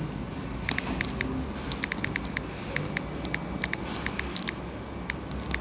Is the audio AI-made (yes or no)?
no